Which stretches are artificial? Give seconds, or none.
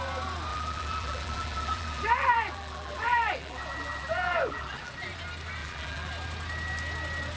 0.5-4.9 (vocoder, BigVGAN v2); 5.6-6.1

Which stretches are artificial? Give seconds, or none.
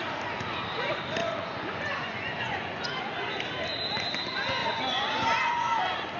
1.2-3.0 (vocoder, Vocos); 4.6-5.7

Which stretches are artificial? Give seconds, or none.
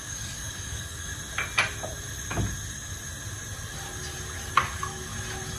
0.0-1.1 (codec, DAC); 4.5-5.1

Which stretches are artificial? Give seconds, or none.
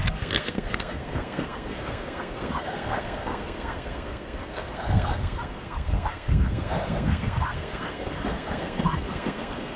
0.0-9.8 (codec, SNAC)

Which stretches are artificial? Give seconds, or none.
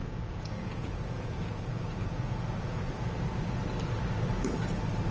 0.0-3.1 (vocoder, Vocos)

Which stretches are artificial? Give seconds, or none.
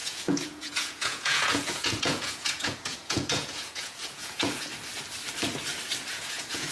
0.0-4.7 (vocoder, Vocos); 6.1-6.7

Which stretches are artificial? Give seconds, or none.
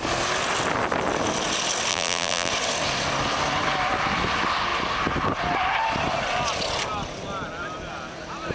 1.9-2.5 (vocoder, BigVGAN v2)